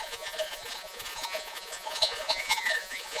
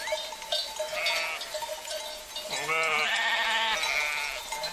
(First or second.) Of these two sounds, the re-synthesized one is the first